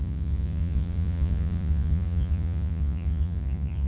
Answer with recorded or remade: remade